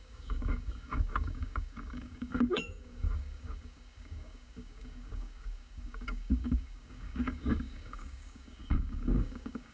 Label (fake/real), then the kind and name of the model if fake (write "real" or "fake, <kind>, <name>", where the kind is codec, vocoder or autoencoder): fake, codec, DAC